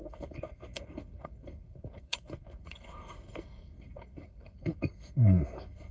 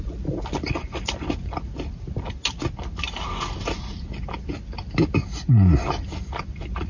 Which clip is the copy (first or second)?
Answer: first